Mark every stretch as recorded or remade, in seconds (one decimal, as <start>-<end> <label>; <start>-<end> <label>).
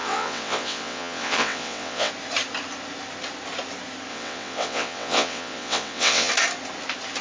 0.0-2.1 remade; 2.1-4.1 recorded; 4.1-6.3 remade; 6.3-7.2 recorded